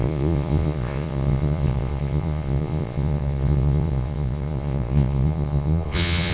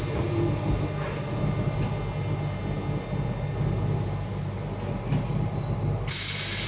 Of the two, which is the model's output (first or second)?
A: first